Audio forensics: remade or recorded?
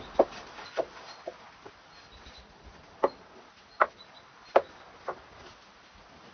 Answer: recorded